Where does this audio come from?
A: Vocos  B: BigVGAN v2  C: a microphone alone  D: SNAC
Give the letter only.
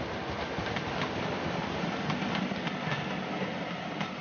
C